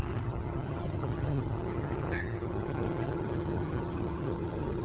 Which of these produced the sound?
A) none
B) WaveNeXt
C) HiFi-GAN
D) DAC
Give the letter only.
C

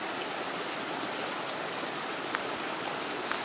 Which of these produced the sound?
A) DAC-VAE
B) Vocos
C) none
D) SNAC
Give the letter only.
C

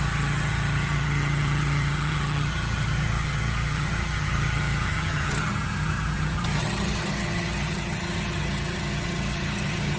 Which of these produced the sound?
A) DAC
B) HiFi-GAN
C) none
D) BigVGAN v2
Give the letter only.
B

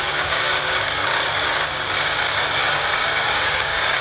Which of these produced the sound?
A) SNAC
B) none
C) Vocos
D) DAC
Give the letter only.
D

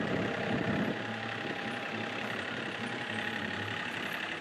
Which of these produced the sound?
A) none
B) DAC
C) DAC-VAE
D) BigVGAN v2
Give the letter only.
D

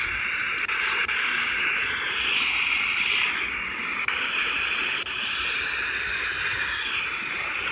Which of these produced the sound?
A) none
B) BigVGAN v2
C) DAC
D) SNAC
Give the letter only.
A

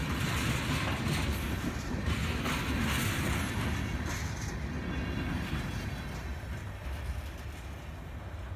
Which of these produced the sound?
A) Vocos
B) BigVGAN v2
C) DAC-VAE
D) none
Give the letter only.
D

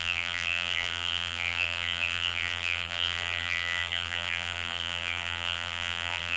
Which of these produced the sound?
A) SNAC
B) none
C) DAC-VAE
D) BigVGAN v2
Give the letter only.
D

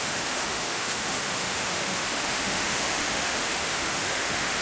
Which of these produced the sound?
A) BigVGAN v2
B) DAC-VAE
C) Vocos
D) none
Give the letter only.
B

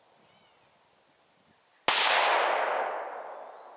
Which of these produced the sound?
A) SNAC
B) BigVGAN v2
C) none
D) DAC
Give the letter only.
C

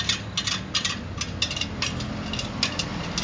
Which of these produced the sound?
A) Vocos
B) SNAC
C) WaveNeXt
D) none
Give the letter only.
D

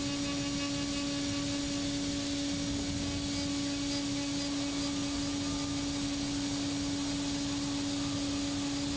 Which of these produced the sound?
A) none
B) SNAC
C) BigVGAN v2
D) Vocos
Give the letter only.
A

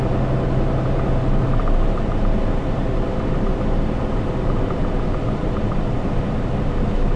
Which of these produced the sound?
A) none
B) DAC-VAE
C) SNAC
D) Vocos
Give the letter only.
A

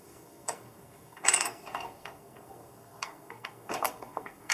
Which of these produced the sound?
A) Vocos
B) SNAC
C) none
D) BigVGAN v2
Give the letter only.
B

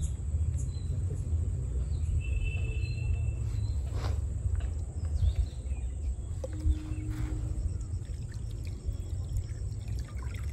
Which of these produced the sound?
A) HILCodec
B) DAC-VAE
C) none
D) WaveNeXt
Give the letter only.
C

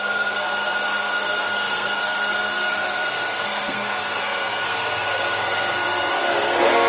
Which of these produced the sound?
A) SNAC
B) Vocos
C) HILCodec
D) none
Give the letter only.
A